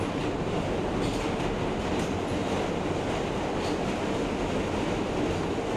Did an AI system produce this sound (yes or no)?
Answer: no